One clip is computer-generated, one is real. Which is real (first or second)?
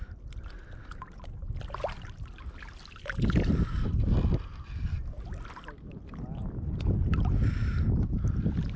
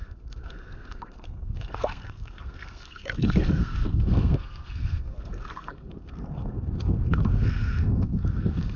first